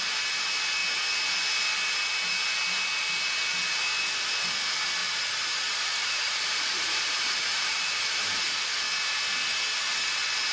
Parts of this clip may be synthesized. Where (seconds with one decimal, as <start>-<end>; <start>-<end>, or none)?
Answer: 5.0-8.6